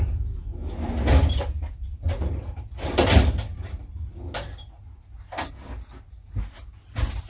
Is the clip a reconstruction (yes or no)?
no